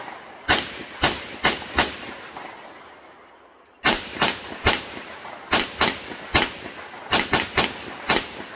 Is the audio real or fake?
real